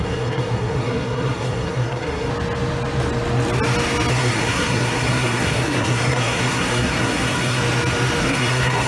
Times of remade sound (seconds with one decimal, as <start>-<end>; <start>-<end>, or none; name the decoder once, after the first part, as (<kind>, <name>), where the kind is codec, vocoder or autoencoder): 0.0-2.3 (codec, SNAC); 4.1-7.6; 8.2-8.9